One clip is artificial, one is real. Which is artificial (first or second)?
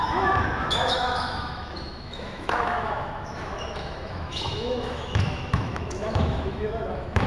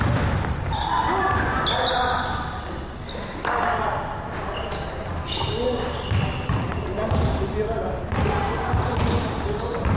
first